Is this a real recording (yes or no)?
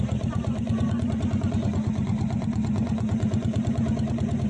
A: no